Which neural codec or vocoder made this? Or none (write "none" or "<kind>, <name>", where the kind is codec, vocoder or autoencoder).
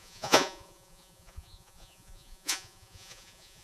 vocoder, Vocos